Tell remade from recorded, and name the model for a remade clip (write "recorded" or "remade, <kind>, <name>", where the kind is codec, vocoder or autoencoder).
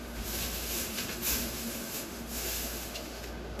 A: remade, autoencoder, DAC-VAE